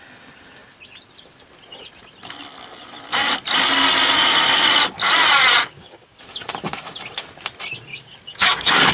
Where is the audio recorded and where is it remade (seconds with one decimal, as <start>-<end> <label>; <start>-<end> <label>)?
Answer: 0.0-5.6 recorded; 5.6-6.2 remade; 6.2-7.9 recorded; 7.9-8.9 remade